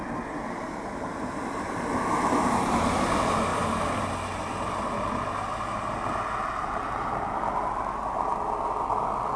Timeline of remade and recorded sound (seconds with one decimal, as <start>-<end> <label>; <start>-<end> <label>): 0.0-3.5 recorded; 3.5-4.1 remade; 4.1-9.4 recorded

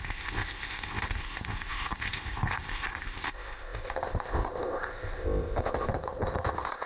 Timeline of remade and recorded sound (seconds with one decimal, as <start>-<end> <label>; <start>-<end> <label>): 0.0-6.9 remade